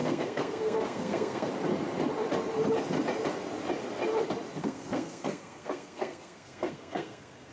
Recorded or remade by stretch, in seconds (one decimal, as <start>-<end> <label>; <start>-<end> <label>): 0.0-1.5 remade; 1.5-4.6 recorded; 4.6-7.5 remade